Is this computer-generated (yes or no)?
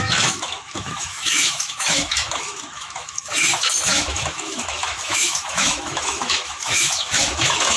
yes